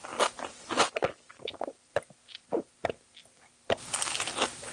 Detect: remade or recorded recorded